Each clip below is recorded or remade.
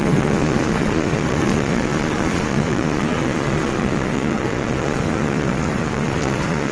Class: remade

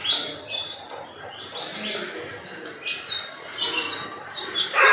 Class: recorded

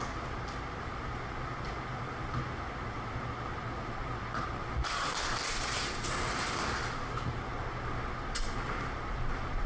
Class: recorded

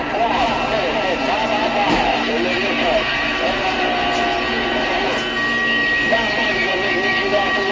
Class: recorded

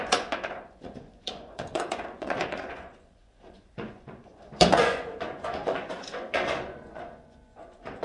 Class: remade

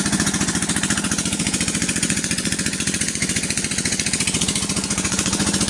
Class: remade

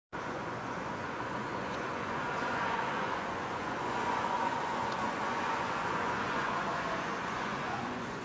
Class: remade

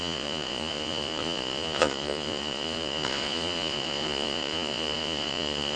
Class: remade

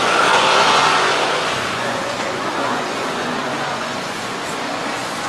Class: remade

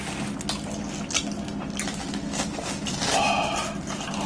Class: recorded